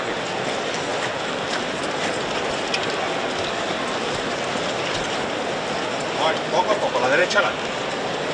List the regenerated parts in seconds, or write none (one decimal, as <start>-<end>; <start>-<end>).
0.9-2.9; 7.2-8.3